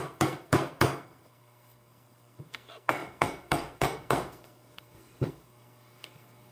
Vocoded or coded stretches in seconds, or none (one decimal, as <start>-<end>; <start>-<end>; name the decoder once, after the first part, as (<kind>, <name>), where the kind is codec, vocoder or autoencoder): 0.0-6.5 (codec, SNAC)